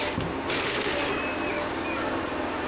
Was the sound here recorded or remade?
recorded